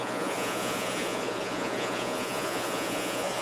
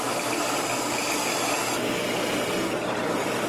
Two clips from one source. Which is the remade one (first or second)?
first